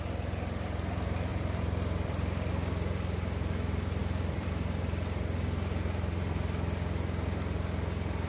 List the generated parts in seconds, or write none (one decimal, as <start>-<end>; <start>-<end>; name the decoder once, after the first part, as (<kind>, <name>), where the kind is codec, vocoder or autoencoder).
1.3-2.5 (vocoder, BigVGAN v2); 4.0-4.5